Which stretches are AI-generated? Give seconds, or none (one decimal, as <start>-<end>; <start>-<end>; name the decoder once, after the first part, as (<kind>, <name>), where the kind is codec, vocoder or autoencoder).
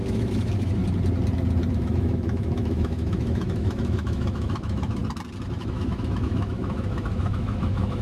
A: 0.0-0.8 (autoencoder, DAC-VAE); 1.7-5.0; 5.6-8.0